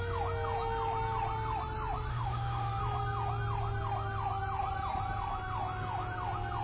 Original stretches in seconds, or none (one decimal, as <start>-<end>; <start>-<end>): 0.0-2.1; 2.8-6.6